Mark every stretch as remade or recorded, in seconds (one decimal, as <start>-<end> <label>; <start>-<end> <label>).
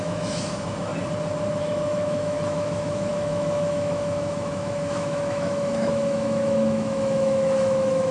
0.0-0.9 remade; 0.9-1.6 recorded; 1.6-8.1 remade